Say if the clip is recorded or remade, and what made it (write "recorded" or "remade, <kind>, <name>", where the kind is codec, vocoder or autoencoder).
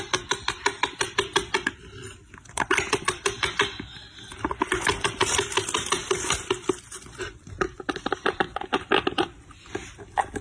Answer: remade, vocoder, BigVGAN v2